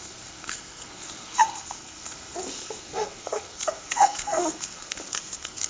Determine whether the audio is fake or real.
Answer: fake